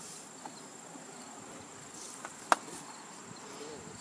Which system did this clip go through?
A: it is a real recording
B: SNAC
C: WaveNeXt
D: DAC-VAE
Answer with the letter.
A